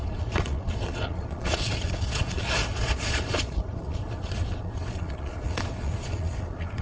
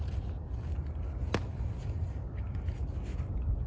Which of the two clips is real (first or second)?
second